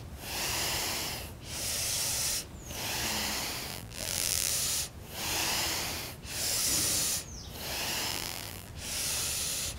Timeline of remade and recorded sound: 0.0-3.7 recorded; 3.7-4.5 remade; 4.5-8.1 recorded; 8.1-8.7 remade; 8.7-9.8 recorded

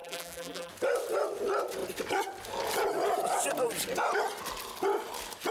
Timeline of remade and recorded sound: 0.0-0.7 remade; 0.7-5.5 recorded

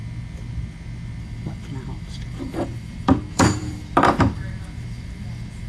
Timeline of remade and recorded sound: 0.0-1.2 recorded; 1.2-5.7 remade

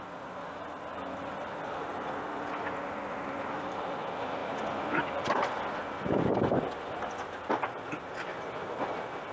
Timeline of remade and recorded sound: 0.0-4.4 remade; 4.4-5.0 recorded; 5.0-9.3 remade